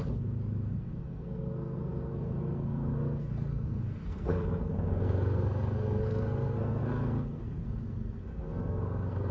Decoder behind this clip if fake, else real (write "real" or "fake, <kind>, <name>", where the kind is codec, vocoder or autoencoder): fake, codec, SNAC